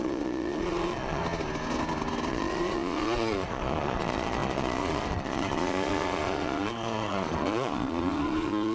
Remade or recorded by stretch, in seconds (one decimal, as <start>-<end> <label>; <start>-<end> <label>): 0.0-1.2 remade; 1.2-2.3 recorded; 2.3-8.7 remade